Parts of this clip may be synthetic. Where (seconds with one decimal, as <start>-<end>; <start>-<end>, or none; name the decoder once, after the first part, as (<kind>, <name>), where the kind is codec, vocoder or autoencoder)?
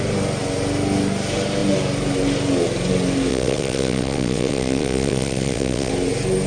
3.3-5.9 (vocoder, WaveNeXt)